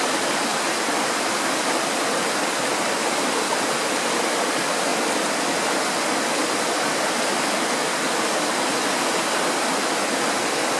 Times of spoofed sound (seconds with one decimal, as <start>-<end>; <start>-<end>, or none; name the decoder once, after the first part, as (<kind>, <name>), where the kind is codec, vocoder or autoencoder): 0.5-3.3 (vocoder, BigVGAN v2); 4.9-5.4